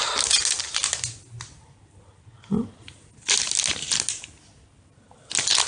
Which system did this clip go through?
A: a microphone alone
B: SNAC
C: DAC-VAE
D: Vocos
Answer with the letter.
A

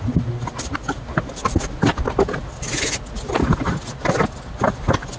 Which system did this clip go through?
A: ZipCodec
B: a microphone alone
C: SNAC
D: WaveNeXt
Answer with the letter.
B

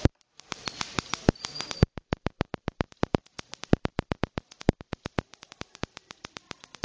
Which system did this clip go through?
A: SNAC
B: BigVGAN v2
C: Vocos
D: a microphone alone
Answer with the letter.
B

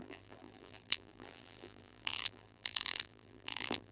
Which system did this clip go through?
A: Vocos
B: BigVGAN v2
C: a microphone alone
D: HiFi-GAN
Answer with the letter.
B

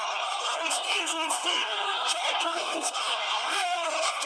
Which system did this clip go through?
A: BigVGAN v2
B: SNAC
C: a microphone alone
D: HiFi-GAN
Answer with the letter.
B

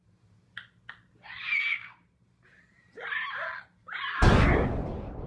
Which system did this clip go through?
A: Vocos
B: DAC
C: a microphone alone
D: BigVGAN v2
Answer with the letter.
C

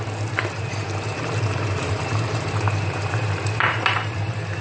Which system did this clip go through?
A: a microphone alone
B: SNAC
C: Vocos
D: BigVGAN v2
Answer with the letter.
D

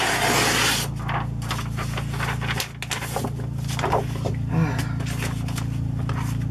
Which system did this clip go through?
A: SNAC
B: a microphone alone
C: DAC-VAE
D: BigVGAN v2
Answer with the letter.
B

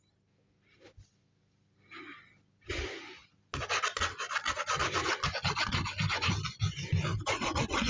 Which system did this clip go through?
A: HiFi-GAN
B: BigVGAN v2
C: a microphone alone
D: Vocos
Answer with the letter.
C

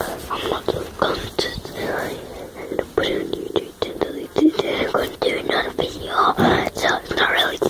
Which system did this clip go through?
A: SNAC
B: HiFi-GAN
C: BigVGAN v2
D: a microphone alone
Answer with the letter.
D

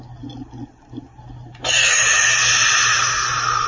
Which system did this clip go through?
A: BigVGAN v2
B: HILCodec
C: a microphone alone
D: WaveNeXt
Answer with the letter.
C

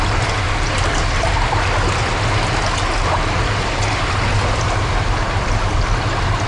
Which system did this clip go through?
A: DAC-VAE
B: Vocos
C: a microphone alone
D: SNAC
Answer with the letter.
C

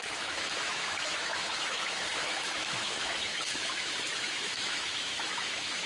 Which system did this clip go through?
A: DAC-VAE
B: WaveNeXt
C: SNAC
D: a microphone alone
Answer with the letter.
A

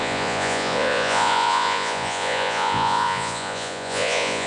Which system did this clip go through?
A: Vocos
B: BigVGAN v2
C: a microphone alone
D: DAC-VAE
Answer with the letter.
A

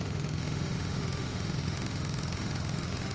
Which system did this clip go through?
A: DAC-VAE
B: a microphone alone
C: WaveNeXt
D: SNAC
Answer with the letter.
A